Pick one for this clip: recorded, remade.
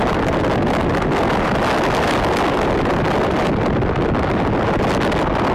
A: recorded